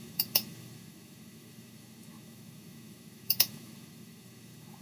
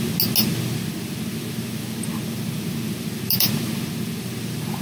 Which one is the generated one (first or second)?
first